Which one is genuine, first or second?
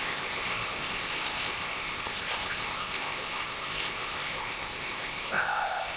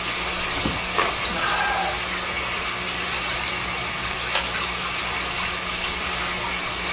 second